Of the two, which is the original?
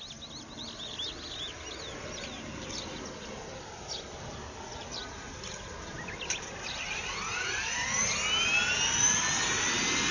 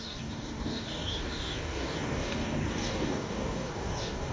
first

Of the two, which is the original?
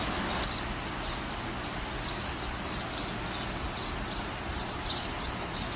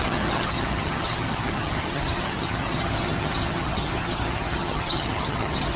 first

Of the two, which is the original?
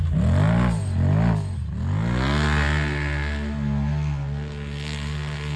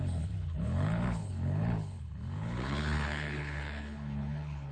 first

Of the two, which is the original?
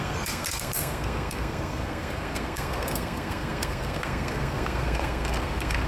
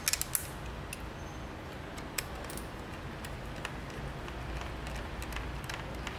second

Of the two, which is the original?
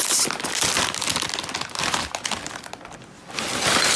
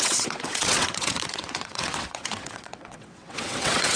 first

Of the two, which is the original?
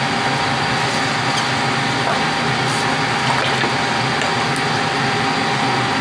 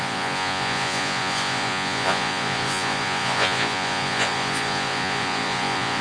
first